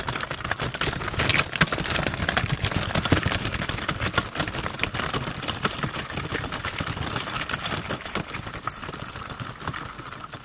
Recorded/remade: recorded